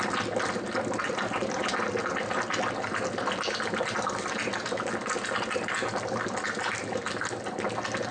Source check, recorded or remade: recorded